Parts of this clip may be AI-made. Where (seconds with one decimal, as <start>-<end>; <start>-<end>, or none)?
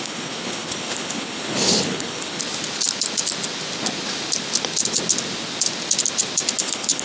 0.0-2.4; 6.6-7.0